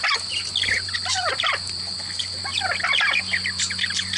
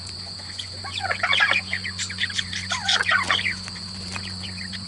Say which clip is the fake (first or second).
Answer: second